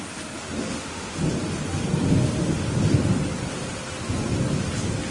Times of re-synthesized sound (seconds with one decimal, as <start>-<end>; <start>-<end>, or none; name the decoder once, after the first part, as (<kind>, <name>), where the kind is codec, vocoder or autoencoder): 0.6-1.2 (autoencoder, DAC-VAE)